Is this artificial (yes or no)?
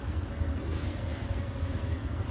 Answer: yes